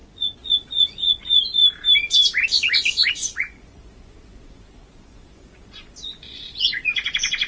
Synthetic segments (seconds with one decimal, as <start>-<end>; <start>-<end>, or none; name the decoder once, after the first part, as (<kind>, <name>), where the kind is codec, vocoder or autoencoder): 0.0-1.6 (vocoder, Vocos); 3.1-7.5